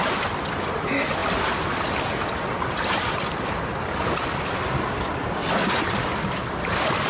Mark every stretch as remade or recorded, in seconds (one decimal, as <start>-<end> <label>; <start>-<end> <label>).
0.0-7.1 recorded